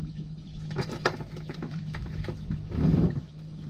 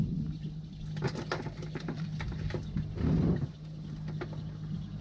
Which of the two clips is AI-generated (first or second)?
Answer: first